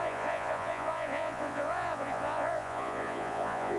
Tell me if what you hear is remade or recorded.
remade